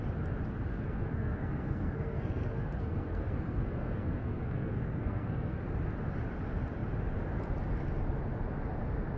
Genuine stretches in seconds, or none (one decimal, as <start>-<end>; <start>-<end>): 0.0-0.7; 5.6-9.2